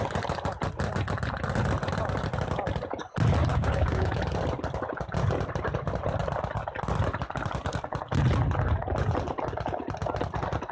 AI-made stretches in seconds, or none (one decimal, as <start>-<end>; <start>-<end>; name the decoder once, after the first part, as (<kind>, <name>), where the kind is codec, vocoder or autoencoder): 3.5-4.1 (codec, DAC)